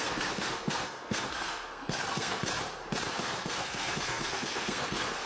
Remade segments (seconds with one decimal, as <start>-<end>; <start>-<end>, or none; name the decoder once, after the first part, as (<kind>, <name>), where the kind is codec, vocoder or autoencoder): 0.0-2.5 (codec, SNAC); 3.1-5.3